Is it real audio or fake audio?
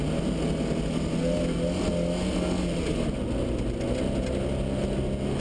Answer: real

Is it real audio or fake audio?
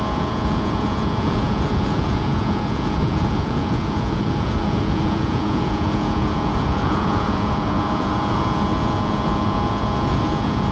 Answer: fake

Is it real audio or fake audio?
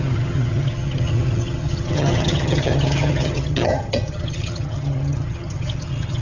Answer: fake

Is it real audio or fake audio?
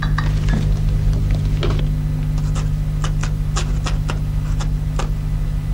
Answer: real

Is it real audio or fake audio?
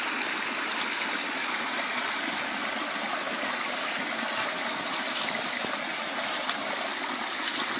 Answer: real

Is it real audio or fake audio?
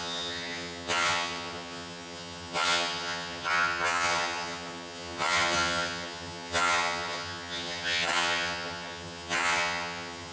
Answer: fake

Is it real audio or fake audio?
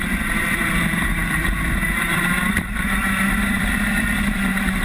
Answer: fake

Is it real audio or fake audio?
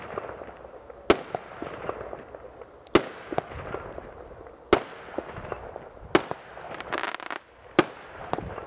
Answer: real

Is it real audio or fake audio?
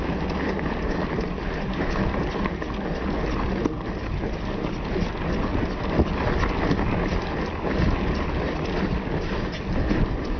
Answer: real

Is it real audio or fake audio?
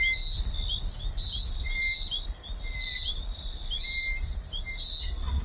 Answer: real